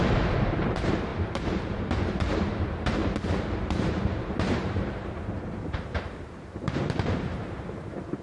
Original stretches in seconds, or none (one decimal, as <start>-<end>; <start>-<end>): 3.0-3.6